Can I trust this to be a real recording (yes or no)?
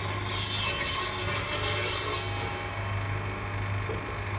yes